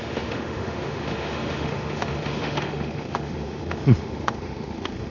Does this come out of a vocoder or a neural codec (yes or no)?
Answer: yes